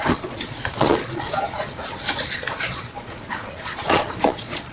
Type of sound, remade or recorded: remade